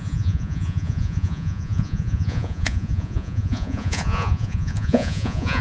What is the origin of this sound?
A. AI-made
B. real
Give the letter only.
A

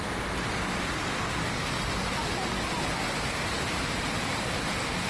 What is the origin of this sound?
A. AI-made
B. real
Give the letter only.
B